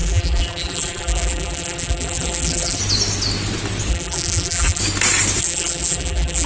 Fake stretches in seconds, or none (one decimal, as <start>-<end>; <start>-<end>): 0.0-2.8; 3.9-4.8; 5.4-6.5

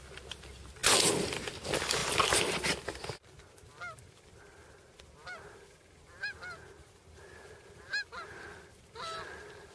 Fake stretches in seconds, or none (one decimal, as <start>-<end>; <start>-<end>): none